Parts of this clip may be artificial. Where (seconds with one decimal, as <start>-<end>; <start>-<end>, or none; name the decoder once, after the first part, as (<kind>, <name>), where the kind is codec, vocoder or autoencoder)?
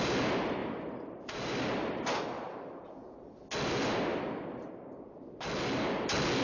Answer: 0.6-1.7 (vocoder, BigVGAN v2)